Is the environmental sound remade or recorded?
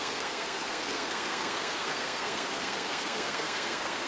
remade